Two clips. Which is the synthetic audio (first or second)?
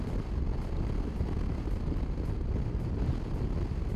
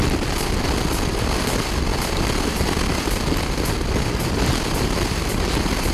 second